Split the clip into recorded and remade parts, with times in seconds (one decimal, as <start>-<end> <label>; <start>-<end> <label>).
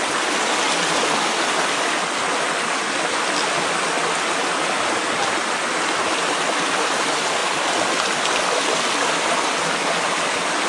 0.0-10.7 recorded